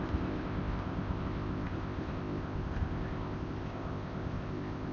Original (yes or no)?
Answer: no